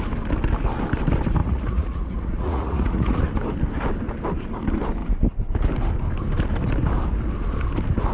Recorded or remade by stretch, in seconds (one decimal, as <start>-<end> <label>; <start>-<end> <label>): 0.0-1.4 recorded; 1.4-3.2 remade; 3.2-8.1 recorded